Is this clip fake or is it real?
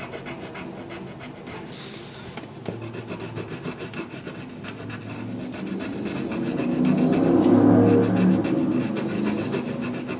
real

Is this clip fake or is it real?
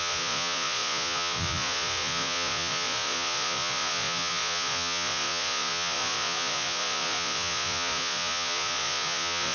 fake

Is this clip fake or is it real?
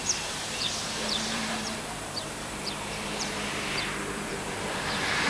fake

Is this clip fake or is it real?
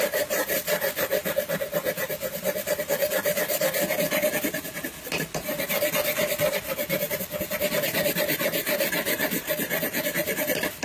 real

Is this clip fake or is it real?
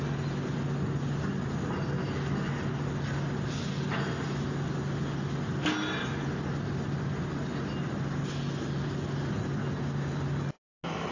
real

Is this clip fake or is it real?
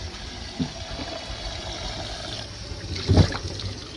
real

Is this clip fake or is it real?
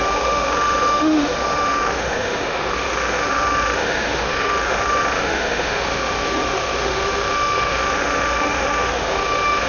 fake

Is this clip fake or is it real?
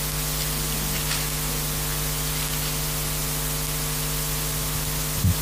real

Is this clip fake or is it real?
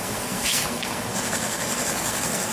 fake